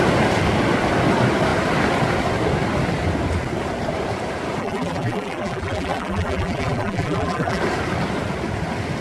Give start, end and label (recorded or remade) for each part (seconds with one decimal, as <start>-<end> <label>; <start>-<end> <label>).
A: 0.0-4.6 recorded; 4.6-7.6 remade; 7.6-9.0 recorded